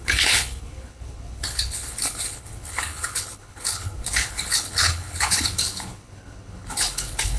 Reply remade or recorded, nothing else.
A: remade